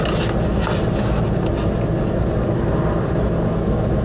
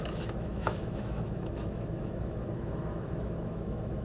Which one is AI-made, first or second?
second